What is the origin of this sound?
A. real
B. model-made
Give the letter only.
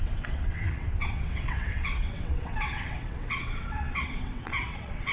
B